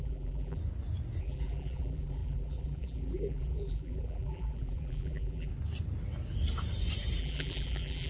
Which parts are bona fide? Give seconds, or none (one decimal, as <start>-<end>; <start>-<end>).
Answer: 0.6-1.2; 5.5-7.2

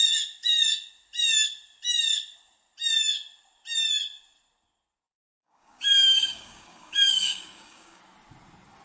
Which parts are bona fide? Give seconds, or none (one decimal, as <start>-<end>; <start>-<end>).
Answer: 0.0-5.4; 8.0-8.8